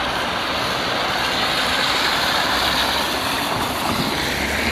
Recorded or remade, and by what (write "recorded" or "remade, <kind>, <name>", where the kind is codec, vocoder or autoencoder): recorded